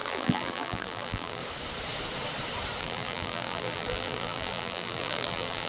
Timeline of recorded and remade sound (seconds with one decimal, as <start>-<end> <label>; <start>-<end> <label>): 0.0-1.4 remade; 1.4-2.8 recorded; 2.8-5.7 remade